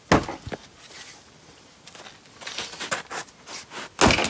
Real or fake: real